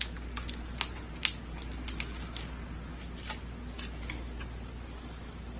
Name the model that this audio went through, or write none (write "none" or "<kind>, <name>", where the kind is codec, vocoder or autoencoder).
none